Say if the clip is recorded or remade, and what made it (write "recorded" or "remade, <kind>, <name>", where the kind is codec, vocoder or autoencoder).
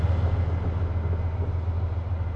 recorded